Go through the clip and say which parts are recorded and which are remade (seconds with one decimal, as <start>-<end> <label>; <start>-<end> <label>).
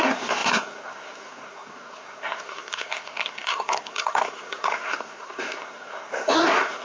0.0-6.8 remade